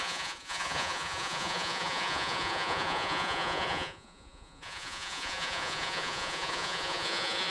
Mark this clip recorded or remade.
remade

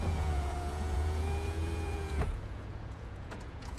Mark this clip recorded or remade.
remade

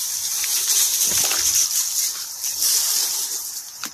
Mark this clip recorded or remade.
recorded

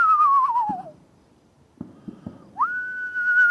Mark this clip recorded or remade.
recorded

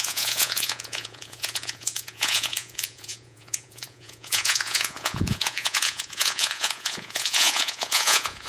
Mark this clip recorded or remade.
remade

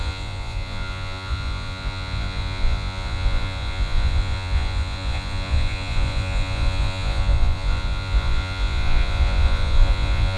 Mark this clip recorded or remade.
remade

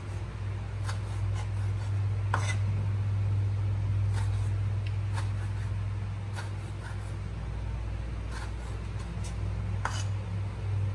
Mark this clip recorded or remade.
recorded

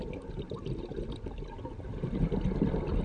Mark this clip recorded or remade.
recorded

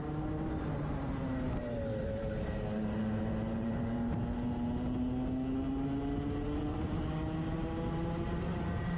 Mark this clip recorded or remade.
recorded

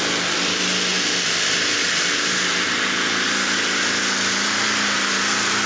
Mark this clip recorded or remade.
recorded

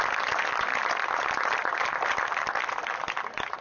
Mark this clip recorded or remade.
recorded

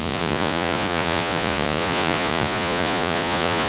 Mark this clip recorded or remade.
remade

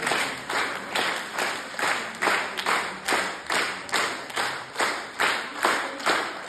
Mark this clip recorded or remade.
recorded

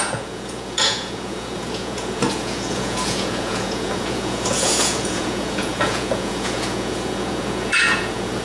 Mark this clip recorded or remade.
remade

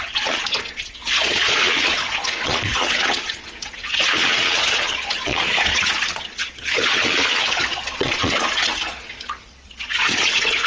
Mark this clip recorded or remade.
remade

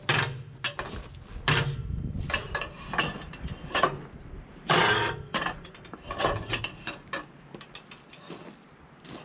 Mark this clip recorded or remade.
recorded